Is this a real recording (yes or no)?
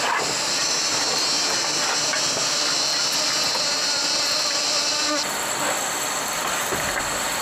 yes